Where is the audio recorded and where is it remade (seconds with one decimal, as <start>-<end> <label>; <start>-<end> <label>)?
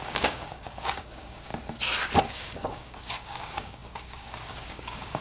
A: 0.0-1.5 remade; 1.5-2.2 recorded; 2.2-5.2 remade